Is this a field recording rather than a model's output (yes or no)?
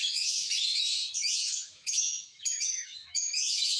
no